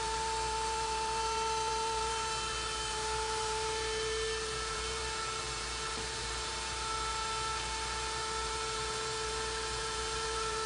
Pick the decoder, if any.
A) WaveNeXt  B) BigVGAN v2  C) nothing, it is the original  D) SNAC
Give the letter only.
B